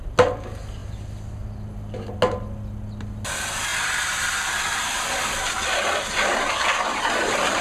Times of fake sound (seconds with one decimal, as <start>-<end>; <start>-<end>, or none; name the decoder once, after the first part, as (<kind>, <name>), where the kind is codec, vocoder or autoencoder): none